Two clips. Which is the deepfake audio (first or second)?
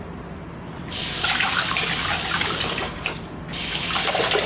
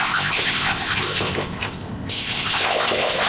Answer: second